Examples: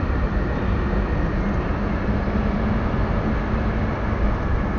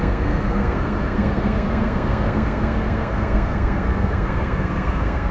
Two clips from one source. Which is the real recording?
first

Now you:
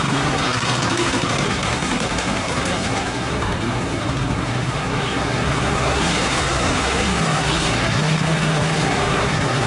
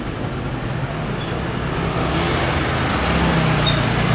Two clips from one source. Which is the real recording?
second